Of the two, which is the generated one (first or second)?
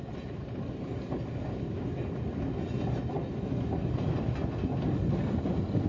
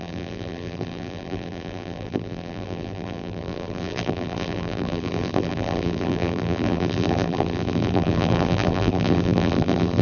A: second